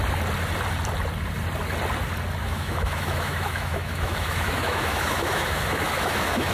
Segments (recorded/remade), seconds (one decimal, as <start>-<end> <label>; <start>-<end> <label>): 0.0-2.4 recorded; 2.4-6.5 remade